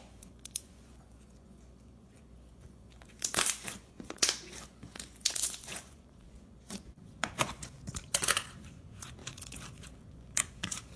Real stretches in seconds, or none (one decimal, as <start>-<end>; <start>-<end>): none